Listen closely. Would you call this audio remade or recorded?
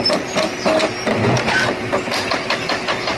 remade